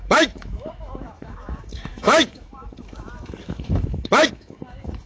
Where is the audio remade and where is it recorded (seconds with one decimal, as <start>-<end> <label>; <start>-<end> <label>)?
0.0-5.1 remade

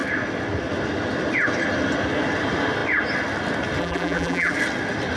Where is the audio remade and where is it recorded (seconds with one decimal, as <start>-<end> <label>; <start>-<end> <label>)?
0.0-3.8 recorded; 3.8-4.5 remade; 4.5-5.2 recorded

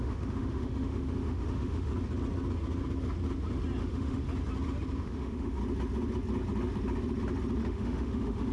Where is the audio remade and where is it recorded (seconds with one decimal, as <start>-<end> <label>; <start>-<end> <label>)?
0.0-1.9 remade; 1.9-3.8 recorded; 3.8-4.2 remade; 4.2-5.0 recorded; 5.0-5.6 remade; 5.6-7.6 recorded; 7.6-8.5 remade

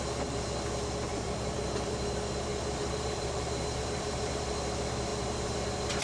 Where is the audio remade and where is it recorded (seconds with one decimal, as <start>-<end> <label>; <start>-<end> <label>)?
0.0-1.1 recorded; 1.1-2.1 remade; 2.1-2.5 recorded; 2.5-4.5 remade; 4.5-5.1 recorded; 5.1-6.0 remade